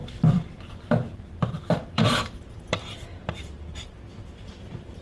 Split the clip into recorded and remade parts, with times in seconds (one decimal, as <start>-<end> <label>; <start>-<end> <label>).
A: 0.0-1.8 recorded; 1.8-5.0 remade